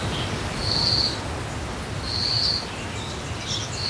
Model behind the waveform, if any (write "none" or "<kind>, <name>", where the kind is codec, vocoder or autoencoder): none